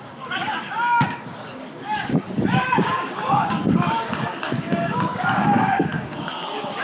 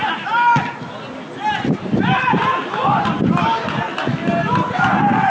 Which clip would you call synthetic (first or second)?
first